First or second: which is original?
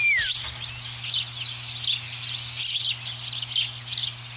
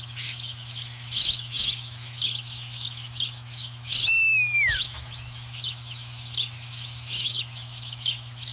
first